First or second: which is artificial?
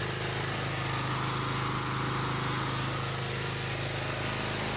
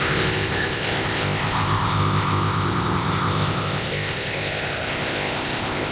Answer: second